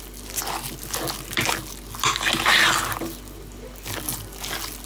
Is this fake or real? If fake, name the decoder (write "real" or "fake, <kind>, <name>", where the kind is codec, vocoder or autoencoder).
real